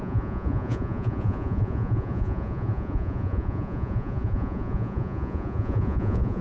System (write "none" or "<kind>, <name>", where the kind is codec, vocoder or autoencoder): vocoder, Vocos